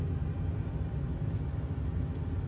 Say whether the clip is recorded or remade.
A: recorded